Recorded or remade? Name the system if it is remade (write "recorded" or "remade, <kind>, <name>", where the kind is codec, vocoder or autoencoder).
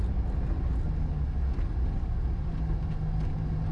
recorded